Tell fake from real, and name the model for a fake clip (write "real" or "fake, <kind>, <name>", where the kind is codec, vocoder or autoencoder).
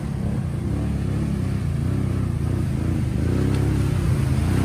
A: real